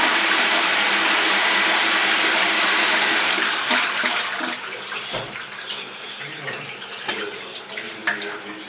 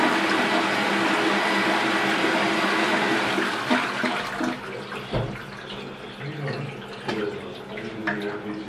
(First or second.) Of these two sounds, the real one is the second